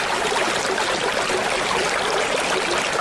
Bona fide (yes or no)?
yes